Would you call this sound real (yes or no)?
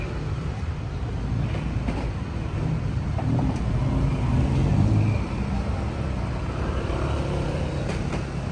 no